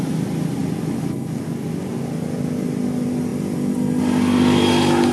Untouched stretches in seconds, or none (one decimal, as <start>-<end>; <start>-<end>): 0.0-5.1